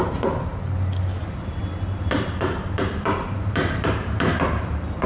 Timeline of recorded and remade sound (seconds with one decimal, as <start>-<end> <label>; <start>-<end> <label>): 0.0-0.5 remade; 0.5-1.2 recorded; 1.2-5.1 remade